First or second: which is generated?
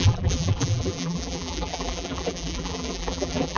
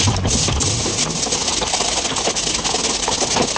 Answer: first